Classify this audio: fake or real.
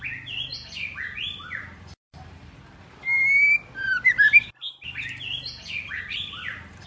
fake